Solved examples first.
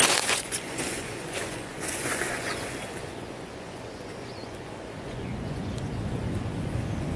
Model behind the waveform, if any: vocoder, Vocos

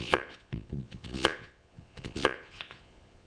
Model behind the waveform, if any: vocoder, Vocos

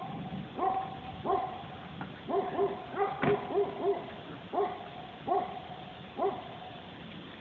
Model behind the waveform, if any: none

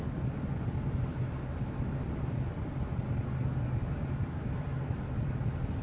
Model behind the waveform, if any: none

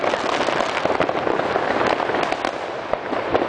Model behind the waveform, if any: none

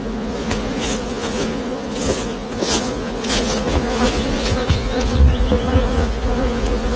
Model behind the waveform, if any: vocoder, Vocos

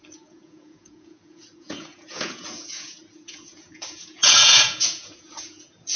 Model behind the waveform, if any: vocoder, Vocos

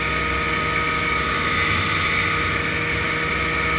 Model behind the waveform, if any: none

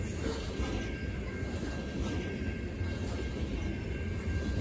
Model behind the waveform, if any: none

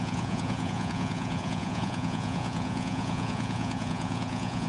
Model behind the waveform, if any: vocoder, Vocos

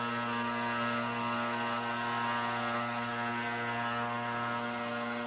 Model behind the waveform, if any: none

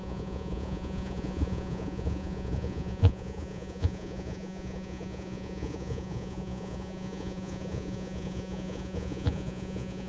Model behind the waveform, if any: vocoder, Vocos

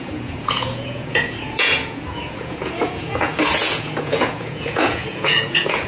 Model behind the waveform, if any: vocoder, Vocos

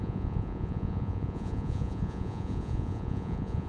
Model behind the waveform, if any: vocoder, Vocos